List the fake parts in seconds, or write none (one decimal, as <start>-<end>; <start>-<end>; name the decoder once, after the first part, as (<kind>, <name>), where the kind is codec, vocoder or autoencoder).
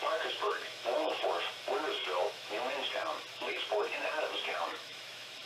0.0-1.2 (autoencoder, DAC-VAE); 2.0-2.7; 3.3-5.5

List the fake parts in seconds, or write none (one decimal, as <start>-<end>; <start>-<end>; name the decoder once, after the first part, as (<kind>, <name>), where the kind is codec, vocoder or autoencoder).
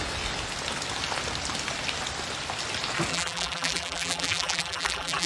3.1-5.3 (vocoder, BigVGAN v2)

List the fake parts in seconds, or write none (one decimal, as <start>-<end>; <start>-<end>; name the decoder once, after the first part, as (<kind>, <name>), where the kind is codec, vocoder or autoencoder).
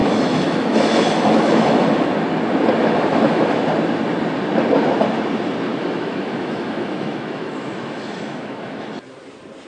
0.0-2.1 (autoencoder, DAC-VAE); 2.8-3.6; 5.7-8.9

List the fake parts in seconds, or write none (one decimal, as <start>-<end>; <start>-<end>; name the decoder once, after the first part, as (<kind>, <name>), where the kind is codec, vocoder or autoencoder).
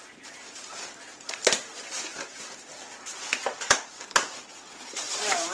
0.0-1.6 (vocoder, BigVGAN v2); 4.9-5.5